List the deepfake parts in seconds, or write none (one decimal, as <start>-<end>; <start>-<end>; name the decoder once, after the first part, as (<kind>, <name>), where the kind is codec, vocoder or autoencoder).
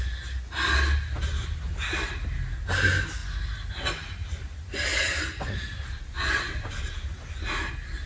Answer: none